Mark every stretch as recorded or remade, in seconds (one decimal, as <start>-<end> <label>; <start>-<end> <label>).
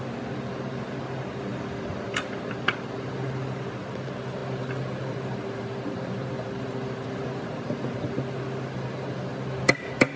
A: 0.0-10.2 recorded